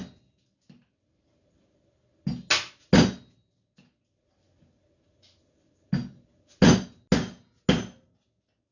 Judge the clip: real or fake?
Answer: real